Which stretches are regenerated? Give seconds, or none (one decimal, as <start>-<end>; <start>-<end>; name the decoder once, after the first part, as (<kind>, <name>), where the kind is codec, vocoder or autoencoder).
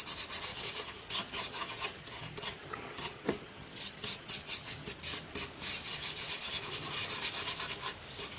0.5-4.9 (vocoder, HiFi-GAN); 5.8-7.1